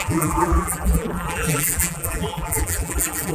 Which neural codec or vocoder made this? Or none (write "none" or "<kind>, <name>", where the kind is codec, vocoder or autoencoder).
vocoder, BigVGAN v2